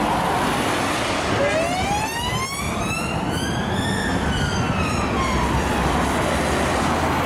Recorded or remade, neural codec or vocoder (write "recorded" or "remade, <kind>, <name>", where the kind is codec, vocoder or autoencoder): recorded